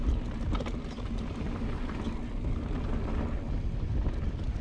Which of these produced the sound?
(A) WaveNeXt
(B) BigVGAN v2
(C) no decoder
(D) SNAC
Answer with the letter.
C